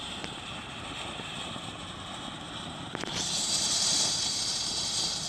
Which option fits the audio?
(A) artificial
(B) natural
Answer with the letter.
A